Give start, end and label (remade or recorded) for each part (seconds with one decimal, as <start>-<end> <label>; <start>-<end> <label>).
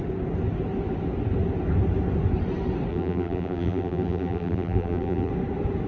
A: 0.0-2.9 recorded; 2.9-5.3 remade; 5.3-5.9 recorded